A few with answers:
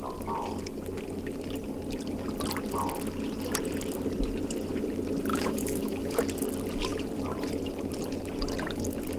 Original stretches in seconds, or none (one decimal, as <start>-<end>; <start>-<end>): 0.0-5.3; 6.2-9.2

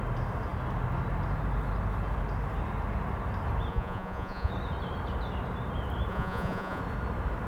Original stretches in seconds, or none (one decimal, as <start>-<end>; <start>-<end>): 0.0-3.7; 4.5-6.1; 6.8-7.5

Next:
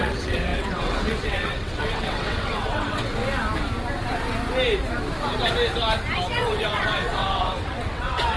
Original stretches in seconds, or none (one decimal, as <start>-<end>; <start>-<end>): 3.1-6.3

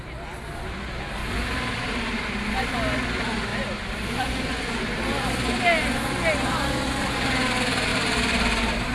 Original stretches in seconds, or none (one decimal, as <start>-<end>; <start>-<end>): 0.0-1.2; 2.3-3.5; 4.5-7.9

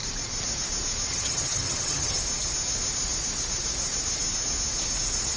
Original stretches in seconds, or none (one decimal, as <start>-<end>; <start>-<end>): 0.0-1.1; 2.2-5.4

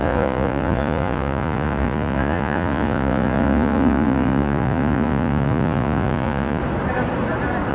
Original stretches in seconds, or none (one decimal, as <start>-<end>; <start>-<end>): 6.6-7.7

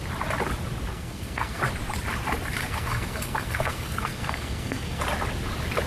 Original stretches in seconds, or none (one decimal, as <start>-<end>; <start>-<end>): 0.0-0.9; 1.6-2.6; 5.0-5.9